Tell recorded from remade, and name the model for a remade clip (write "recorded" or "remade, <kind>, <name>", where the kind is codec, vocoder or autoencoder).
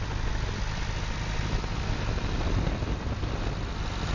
recorded